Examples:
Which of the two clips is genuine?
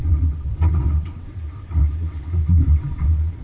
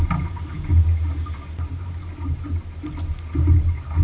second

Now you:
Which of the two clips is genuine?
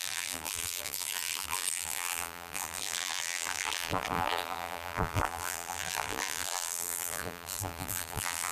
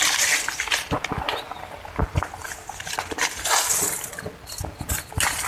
second